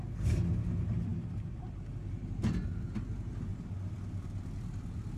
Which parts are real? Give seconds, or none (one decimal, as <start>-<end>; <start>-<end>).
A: 0.0-1.1; 2.6-3.5